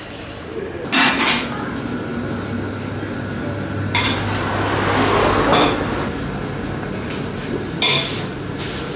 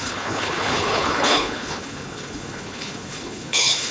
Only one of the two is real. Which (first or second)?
first